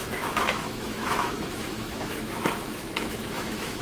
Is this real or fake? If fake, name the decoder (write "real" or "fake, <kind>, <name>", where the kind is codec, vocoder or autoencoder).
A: fake, autoencoder, DAC-VAE